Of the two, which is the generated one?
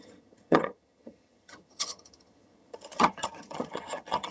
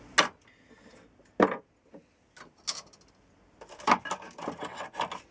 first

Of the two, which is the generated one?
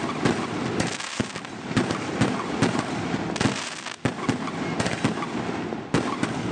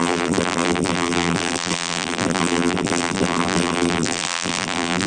second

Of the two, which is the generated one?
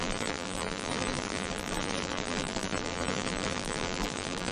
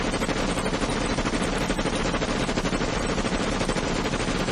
first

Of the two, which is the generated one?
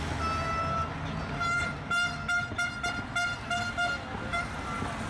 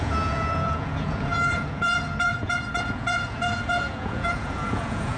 second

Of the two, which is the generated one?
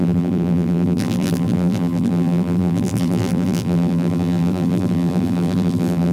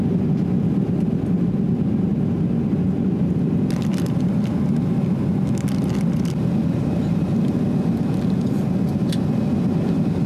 first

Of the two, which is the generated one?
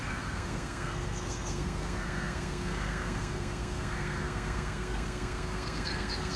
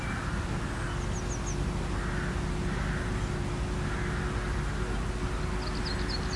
first